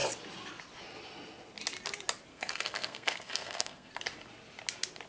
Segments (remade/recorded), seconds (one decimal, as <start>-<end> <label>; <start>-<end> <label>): 0.0-2.3 recorded; 2.3-3.9 remade; 3.9-5.1 recorded